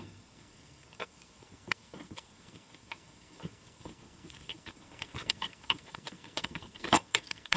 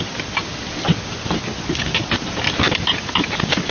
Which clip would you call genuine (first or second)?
second